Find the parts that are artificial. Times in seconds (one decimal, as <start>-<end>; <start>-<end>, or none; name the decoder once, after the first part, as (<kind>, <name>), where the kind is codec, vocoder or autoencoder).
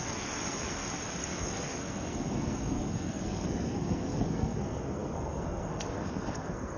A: 0.0-0.8 (codec, SNAC); 1.3-6.8